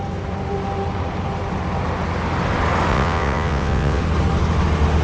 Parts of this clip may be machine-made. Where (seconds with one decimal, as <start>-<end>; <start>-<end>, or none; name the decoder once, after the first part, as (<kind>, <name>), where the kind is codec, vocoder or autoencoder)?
2.9-4.0 (vocoder, WaveNeXt)